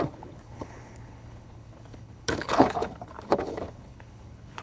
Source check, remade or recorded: remade